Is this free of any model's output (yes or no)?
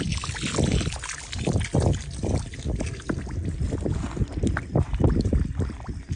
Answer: yes